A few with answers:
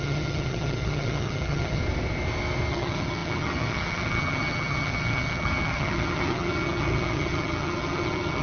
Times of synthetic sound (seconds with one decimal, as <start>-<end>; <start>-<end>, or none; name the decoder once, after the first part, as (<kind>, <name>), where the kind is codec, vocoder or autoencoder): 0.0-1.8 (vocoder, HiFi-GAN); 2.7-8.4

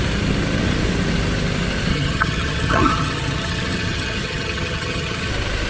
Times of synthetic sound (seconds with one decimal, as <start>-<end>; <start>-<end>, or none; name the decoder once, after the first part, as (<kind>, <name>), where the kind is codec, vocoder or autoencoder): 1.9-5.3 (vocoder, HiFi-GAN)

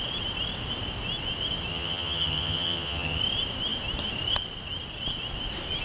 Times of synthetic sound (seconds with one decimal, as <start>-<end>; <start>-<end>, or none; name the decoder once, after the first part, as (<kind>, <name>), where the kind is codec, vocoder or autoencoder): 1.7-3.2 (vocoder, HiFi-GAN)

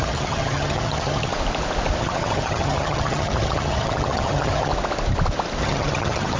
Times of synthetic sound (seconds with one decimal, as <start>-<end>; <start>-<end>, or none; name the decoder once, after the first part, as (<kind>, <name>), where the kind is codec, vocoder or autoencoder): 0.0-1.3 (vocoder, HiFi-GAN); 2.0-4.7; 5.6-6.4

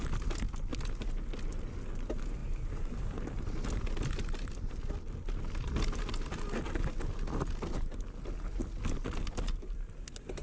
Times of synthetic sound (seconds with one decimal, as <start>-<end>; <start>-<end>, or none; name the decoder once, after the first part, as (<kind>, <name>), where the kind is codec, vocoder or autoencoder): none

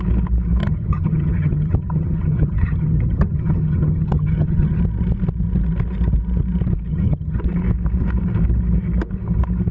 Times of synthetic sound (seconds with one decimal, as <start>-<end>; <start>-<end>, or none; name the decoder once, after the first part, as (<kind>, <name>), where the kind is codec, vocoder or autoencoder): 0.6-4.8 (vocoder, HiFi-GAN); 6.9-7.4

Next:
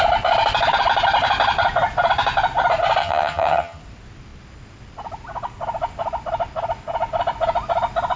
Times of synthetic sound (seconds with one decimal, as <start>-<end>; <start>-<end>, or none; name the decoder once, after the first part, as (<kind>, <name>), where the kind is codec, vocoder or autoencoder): 3.0-3.8 (vocoder, HiFi-GAN)